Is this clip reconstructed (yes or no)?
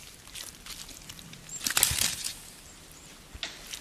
no